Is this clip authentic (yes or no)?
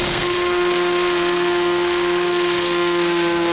no